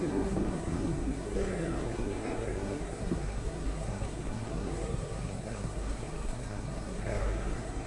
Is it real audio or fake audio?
fake